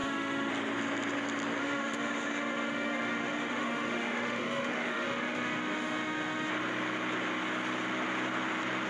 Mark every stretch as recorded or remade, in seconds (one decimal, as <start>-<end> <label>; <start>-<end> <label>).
0.0-0.5 remade; 0.5-1.6 recorded; 1.6-6.5 remade; 6.5-8.9 recorded